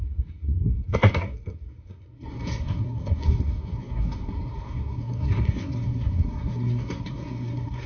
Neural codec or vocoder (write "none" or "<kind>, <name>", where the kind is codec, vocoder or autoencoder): codec, SNAC